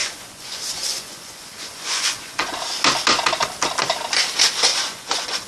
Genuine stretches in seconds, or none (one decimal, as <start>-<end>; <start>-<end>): 2.6-4.7